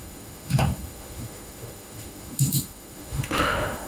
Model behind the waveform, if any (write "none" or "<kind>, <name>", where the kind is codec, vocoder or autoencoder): autoencoder, DAC-VAE